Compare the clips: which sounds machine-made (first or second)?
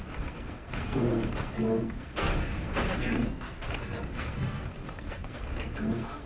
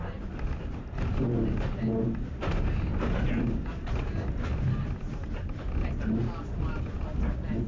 first